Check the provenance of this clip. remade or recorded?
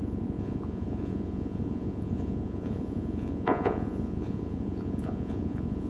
remade